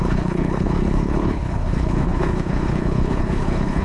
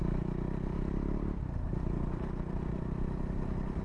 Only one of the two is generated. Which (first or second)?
first